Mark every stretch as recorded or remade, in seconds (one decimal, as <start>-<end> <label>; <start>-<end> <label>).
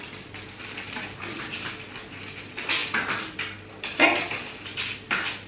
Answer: 0.0-5.5 recorded